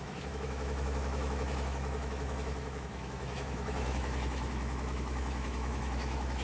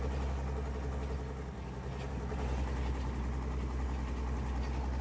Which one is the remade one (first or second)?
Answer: first